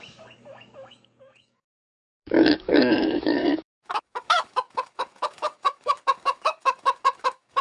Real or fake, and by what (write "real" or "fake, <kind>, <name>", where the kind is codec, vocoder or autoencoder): fake, codec, DAC